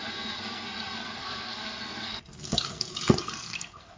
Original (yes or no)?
no